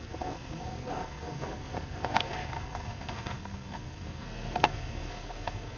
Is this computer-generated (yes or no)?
yes